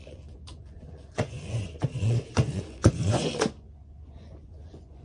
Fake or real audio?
fake